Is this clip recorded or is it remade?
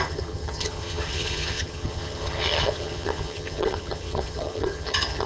remade